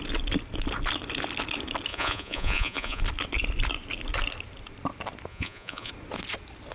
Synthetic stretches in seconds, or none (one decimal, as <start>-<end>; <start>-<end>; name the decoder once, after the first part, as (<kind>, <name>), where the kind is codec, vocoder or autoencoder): 1.9-3.0 (vocoder, Vocos); 5.3-5.9